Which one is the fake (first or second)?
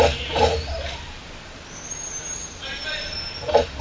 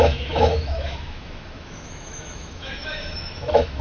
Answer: second